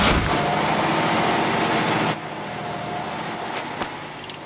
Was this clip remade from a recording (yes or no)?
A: no